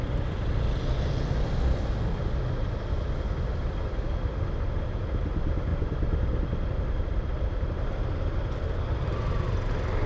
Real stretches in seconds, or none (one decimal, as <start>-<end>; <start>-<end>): 0.0-10.1